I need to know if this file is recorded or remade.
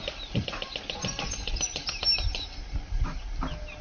recorded